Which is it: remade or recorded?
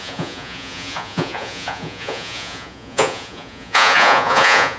remade